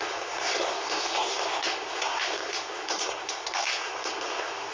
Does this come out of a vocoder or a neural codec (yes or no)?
yes